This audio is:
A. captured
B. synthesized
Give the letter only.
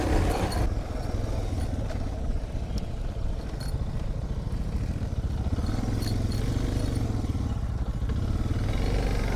A